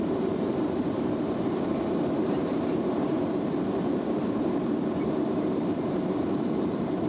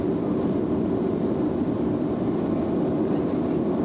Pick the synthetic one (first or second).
first